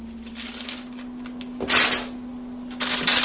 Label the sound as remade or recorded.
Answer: recorded